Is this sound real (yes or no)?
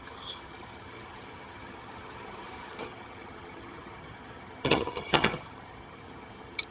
no